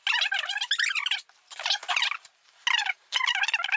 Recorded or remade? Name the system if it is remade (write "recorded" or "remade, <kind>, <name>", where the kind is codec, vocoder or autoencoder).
recorded